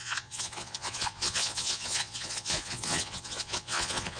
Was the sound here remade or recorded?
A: remade